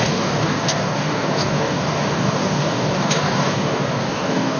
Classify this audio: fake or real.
fake